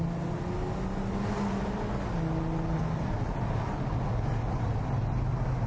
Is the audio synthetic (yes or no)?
no